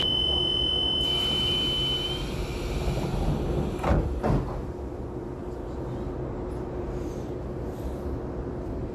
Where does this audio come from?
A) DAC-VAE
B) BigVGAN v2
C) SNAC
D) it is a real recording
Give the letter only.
D